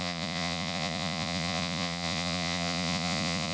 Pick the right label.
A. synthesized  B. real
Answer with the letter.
A